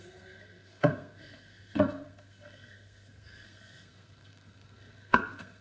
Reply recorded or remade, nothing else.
remade